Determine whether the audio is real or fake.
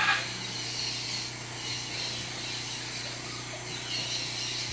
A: real